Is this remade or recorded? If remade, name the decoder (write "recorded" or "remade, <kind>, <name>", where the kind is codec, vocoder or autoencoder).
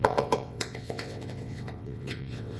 remade, vocoder, WaveNeXt